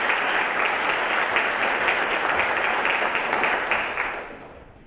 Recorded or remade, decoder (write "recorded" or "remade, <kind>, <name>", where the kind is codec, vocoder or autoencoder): recorded